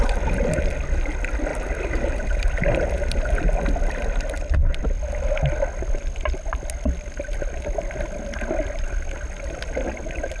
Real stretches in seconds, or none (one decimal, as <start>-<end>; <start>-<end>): 0.0-1.5; 3.5-10.4